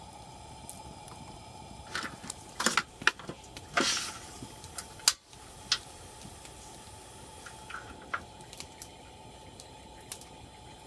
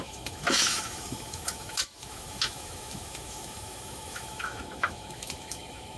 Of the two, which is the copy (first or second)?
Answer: second